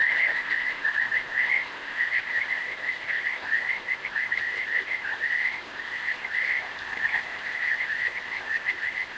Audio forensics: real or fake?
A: fake